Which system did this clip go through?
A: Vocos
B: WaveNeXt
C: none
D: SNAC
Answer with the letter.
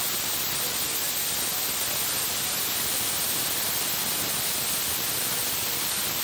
C